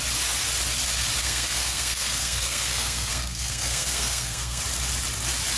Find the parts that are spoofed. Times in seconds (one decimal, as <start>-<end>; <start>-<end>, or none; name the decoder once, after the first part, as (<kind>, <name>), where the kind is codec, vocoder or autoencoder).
1.2-4.6 (codec, SNAC)